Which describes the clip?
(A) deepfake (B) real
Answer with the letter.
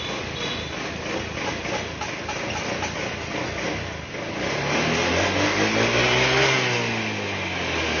B